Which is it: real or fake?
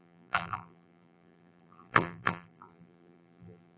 fake